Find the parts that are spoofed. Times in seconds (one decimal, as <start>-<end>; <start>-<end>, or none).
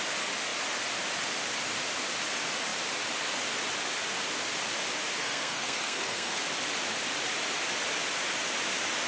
5.2-6.4